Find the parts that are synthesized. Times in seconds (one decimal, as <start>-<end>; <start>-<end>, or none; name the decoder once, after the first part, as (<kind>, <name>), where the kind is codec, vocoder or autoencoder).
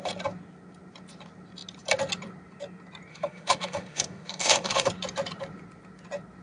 3.1-4.9 (autoencoder, DAC-VAE)